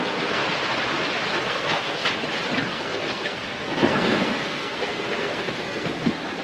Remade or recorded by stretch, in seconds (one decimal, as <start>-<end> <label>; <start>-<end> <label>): 0.0-0.4 remade; 0.4-1.4 recorded; 1.4-2.0 remade; 2.0-2.7 recorded; 2.7-6.4 remade